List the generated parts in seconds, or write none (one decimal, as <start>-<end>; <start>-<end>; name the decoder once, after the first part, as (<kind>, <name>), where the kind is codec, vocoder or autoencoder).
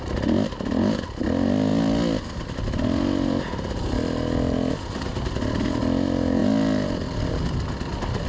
none